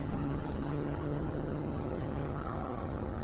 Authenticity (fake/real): fake